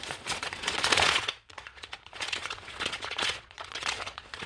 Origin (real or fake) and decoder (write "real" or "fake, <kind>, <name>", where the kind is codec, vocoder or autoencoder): fake, vocoder, Vocos